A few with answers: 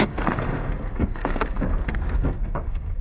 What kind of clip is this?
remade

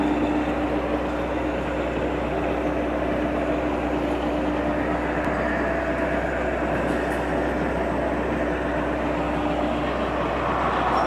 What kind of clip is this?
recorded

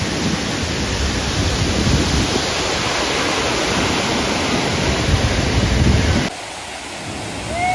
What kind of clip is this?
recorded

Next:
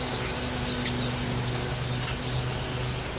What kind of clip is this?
recorded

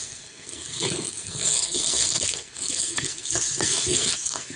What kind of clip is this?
remade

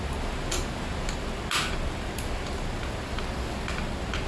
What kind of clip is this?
recorded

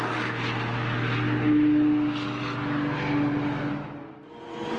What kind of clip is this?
recorded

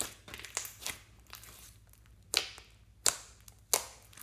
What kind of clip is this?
recorded